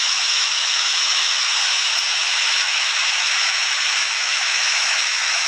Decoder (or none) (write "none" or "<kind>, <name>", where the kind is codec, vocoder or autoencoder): autoencoder, DAC-VAE